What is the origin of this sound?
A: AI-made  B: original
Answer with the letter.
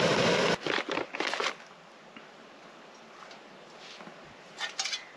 B